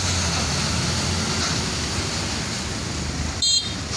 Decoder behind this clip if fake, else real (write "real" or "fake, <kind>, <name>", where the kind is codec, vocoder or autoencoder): real